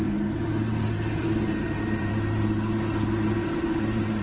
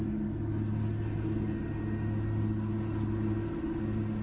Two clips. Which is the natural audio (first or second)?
second